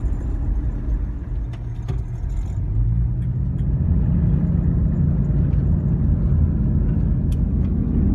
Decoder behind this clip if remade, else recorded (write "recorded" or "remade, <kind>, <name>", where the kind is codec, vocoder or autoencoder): recorded